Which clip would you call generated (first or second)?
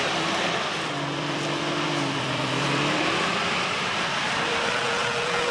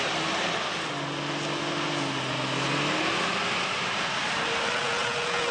first